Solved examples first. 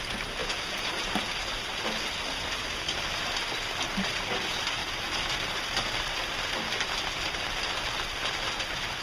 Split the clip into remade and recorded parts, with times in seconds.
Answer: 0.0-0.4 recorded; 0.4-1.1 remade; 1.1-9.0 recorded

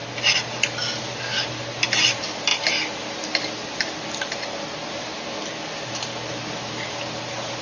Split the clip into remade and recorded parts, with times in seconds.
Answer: 0.0-7.6 recorded